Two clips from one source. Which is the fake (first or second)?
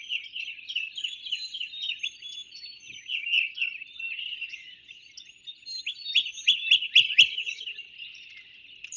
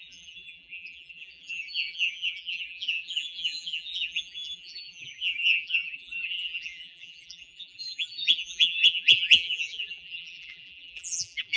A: second